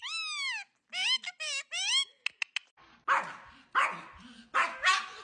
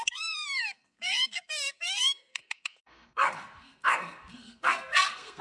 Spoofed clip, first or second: second